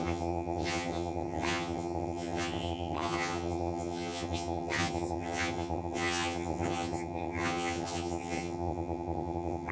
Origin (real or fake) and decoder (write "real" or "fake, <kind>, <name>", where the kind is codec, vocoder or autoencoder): fake, vocoder, HiFi-GAN